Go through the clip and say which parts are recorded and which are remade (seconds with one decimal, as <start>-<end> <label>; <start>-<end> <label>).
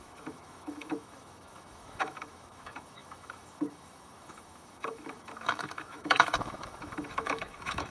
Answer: 0.0-7.9 remade